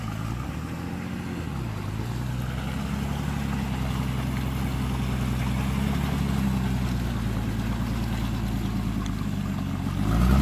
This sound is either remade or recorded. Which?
recorded